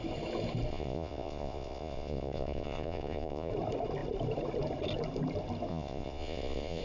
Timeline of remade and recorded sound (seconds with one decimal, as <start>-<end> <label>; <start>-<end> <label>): 0.0-0.7 recorded; 0.7-3.5 remade; 3.5-5.7 recorded; 5.7-6.8 remade